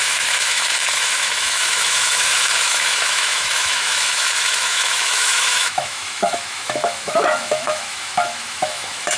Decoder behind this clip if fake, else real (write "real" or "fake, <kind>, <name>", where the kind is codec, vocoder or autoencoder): fake, autoencoder, DAC-VAE